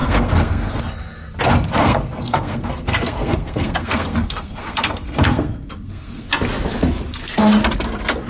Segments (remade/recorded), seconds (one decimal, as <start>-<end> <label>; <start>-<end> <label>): 0.0-0.8 remade; 0.8-1.8 recorded; 1.8-6.3 remade; 6.3-8.3 recorded